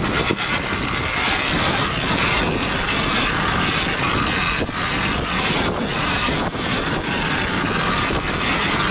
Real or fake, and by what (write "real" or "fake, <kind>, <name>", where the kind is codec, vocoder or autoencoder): real